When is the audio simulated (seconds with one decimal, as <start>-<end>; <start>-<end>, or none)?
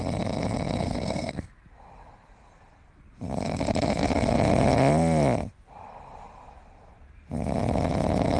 0.8-1.5